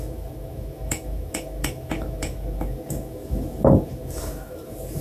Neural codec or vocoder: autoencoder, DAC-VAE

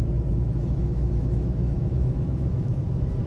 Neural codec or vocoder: autoencoder, DAC-VAE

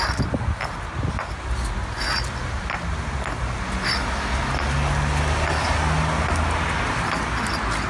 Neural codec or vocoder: none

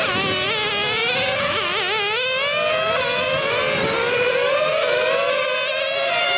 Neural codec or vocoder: none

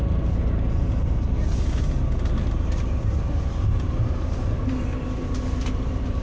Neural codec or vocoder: none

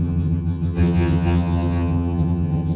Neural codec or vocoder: vocoder, HiFi-GAN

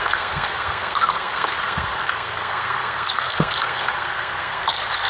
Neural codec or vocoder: codec, SNAC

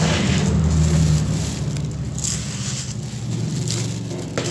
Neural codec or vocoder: none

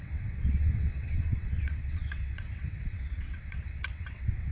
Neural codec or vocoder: vocoder, WaveNeXt